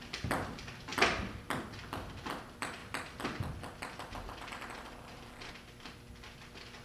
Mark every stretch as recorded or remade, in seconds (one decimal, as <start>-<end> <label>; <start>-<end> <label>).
0.0-6.8 recorded